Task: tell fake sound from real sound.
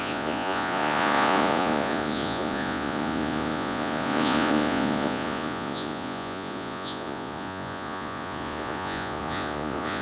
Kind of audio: fake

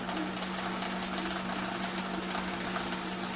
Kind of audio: real